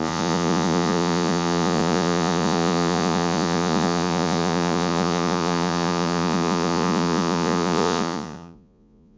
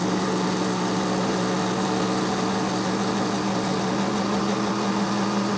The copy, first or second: first